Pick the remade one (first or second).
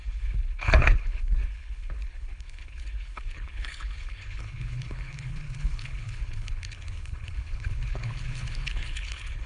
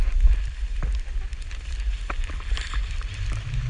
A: first